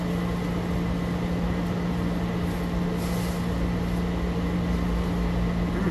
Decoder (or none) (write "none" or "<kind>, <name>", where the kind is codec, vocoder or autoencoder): none